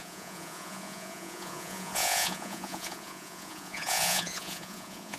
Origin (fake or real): fake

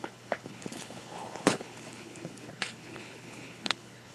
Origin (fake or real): fake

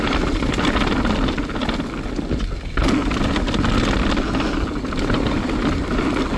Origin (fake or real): real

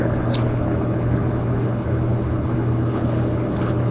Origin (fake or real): fake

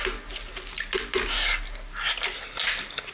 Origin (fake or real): real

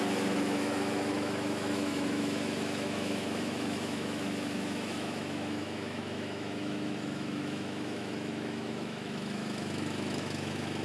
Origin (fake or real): fake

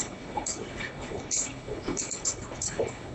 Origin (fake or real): fake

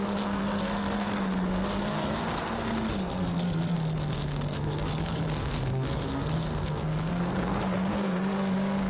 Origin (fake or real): fake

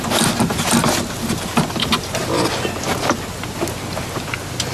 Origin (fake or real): real